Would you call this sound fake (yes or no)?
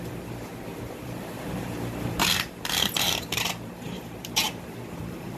yes